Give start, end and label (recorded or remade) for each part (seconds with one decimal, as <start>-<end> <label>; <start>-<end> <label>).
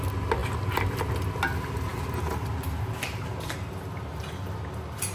0.0-5.1 recorded